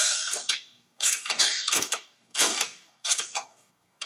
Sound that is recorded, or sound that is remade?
remade